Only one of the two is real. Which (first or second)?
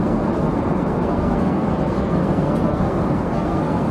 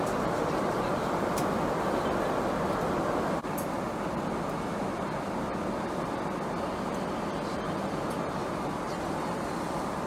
second